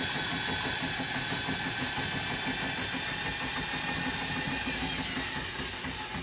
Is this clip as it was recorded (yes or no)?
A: yes